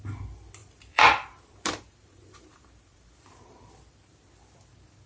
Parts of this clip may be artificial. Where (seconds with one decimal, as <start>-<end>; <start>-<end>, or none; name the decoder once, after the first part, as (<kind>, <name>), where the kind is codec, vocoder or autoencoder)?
0.6-3.7 (vocoder, BigVGAN v2)